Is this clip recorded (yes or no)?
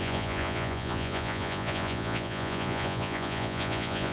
no